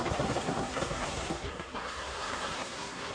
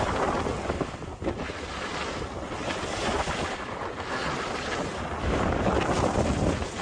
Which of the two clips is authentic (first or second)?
second